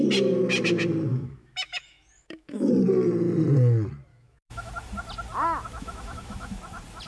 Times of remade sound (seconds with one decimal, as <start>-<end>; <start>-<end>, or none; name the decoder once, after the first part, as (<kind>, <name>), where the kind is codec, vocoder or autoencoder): 1.1-2.7 (autoencoder, DAC-VAE); 4.1-4.7; 5.8-6.6